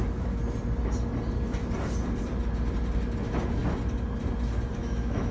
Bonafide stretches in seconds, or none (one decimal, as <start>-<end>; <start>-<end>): 0.4-3.2; 3.6-4.7